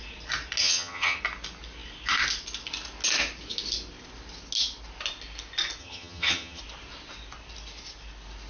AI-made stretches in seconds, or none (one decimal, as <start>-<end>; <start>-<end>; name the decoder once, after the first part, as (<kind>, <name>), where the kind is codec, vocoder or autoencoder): 0.6-1.2 (vocoder, HiFi-GAN); 5.8-6.6